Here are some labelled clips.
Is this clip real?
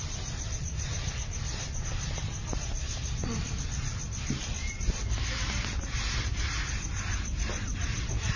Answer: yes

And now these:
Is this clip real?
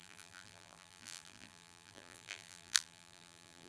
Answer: no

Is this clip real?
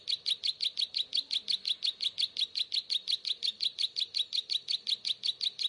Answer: yes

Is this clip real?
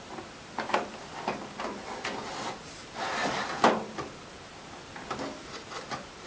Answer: yes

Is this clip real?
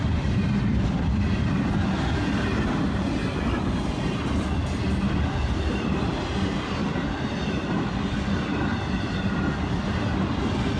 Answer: no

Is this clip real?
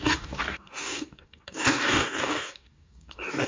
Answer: no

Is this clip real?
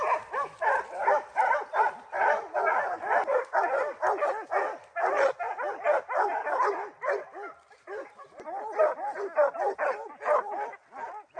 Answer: yes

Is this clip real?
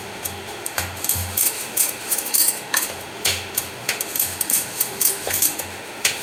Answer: no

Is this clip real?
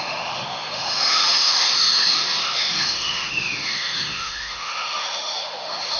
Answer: no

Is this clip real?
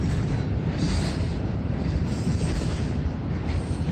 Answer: no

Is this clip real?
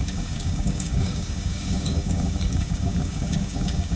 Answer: no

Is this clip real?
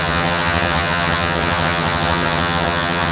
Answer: no